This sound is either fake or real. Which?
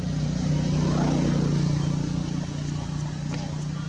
real